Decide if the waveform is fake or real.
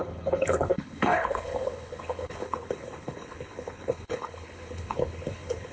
fake